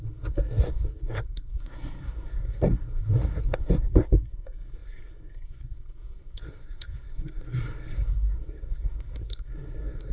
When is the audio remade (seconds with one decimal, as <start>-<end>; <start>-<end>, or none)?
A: 0.0-10.1